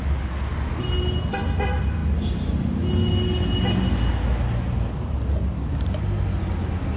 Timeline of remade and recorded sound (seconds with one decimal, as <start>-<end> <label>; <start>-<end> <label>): 0.0-7.0 recorded